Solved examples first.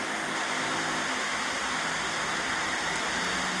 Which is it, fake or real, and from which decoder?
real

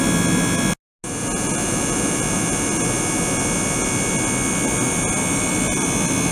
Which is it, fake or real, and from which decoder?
real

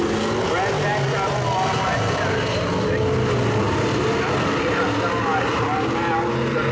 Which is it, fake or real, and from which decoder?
real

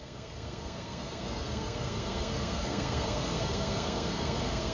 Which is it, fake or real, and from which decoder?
fake, codec, SNAC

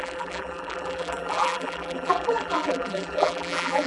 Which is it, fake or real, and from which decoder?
fake, vocoder, BigVGAN v2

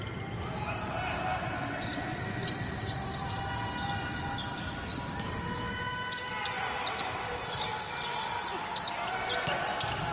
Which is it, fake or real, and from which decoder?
real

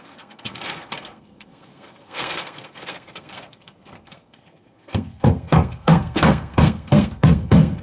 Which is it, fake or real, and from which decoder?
fake, codec, SNAC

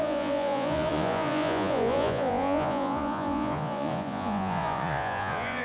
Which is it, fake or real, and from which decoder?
fake, vocoder, Vocos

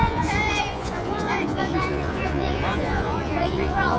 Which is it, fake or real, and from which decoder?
fake, vocoder, Vocos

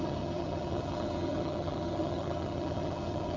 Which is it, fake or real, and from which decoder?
fake, vocoder, HiFi-GAN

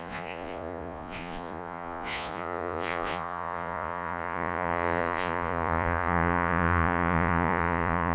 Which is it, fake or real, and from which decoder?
fake, vocoder, Vocos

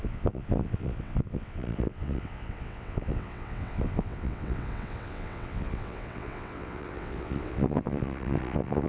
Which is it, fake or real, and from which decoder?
fake, vocoder, WaveNeXt